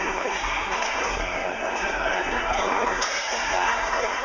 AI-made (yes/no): yes